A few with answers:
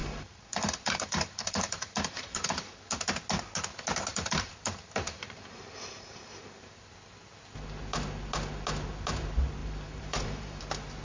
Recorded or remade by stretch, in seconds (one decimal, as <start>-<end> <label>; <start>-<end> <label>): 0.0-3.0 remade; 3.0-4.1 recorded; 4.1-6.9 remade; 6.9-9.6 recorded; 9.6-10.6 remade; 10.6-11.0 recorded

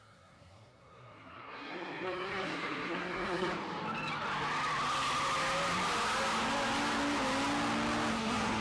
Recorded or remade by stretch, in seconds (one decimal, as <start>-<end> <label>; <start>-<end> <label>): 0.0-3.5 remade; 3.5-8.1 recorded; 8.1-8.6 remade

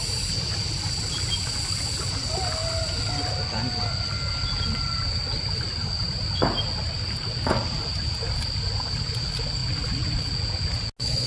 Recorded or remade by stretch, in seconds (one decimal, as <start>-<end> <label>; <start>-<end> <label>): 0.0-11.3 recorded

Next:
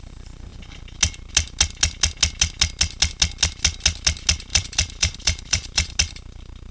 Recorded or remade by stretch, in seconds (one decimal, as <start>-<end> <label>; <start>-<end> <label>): 0.0-4.5 recorded; 4.5-6.0 remade; 6.0-6.7 recorded